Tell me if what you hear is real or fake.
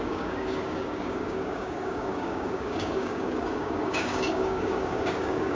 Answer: fake